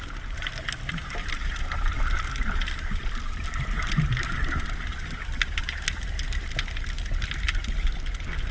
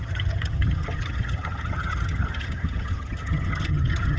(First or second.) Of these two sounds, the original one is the first